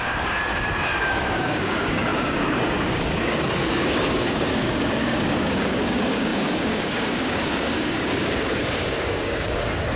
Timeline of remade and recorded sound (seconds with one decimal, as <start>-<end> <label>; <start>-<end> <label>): 0.0-0.4 remade; 0.4-1.0 recorded; 1.0-10.0 remade